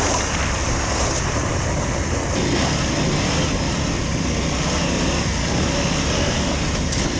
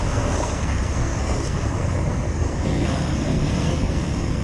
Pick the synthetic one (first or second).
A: second